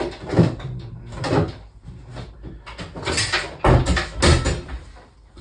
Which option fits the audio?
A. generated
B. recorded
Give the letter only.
B